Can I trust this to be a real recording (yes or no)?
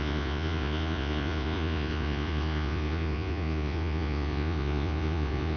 no